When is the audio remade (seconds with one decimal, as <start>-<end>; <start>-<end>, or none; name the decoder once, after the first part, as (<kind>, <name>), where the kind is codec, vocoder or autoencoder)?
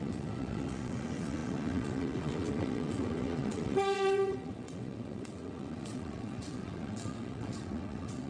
0.0-8.3 (vocoder, WaveNeXt)